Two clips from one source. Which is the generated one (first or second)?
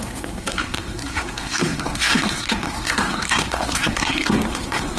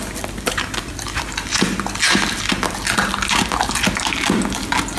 first